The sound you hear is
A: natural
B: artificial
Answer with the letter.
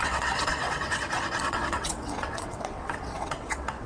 B